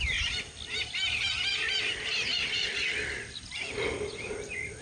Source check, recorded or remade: recorded